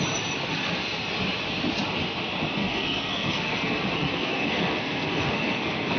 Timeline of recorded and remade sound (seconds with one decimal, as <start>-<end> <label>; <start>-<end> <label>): 0.0-2.6 recorded; 2.6-6.0 remade